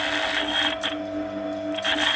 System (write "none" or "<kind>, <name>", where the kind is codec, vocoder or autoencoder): none